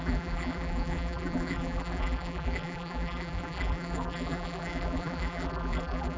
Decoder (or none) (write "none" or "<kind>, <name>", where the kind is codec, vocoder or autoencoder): vocoder, BigVGAN v2